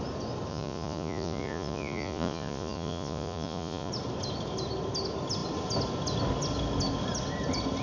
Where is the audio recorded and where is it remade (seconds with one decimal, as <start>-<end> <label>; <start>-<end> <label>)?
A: 0.0-0.5 recorded; 0.5-3.9 remade; 3.9-7.8 recorded